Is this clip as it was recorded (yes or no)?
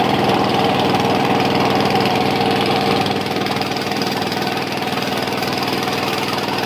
no